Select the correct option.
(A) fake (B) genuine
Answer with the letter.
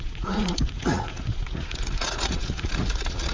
A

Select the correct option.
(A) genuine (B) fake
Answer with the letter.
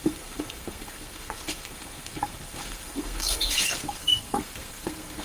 B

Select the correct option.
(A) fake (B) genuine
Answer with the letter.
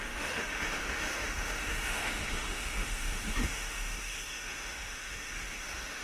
A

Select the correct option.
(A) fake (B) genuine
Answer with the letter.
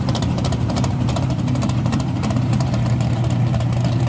A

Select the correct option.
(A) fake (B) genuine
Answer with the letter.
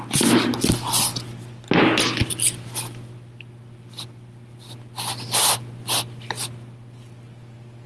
B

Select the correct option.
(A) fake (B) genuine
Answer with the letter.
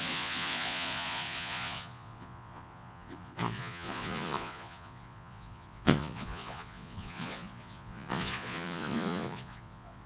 A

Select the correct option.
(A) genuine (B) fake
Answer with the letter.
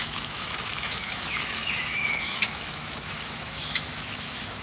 B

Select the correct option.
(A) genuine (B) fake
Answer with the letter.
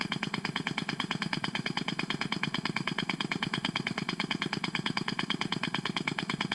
B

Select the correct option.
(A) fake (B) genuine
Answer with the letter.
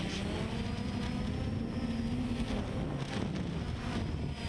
B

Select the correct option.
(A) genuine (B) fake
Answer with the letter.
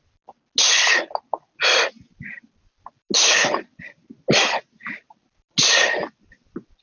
A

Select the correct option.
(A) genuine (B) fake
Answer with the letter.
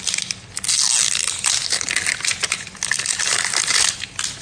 A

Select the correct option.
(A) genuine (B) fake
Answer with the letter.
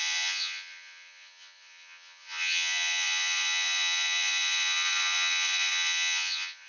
B